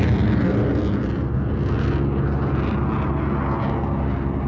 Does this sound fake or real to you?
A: real